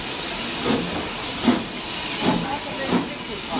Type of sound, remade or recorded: recorded